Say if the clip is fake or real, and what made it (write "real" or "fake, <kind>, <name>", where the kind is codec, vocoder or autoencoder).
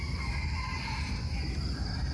real